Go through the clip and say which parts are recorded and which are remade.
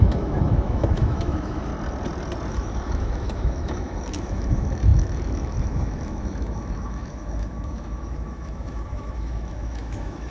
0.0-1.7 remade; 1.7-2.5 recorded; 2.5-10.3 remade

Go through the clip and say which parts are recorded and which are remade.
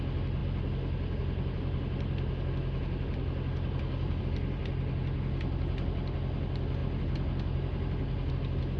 0.0-8.8 recorded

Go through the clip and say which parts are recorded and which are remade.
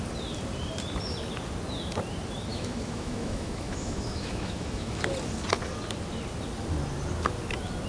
0.0-2.5 recorded; 2.5-5.0 remade; 5.0-7.9 recorded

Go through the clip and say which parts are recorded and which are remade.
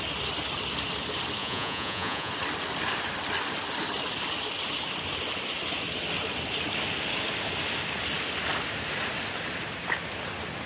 0.0-1.4 recorded; 1.4-2.3 remade; 2.3-10.7 recorded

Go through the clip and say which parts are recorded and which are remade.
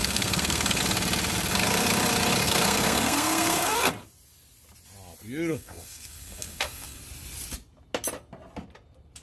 0.0-0.8 remade; 0.8-2.4 recorded; 2.4-3.9 remade; 3.9-5.5 recorded; 5.5-7.0 remade; 7.0-9.2 recorded